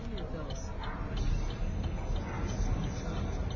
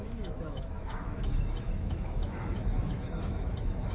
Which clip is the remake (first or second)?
second